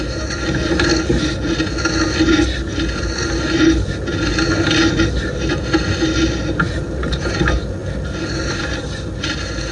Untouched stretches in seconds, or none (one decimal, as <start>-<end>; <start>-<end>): 0.0-9.7